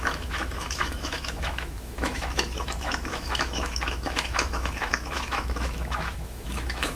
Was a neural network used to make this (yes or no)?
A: yes